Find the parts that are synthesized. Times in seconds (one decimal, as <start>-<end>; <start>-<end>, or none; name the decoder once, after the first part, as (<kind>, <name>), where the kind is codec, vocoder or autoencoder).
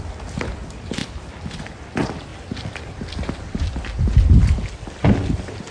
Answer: 0.0-2.3 (vocoder, BigVGAN v2)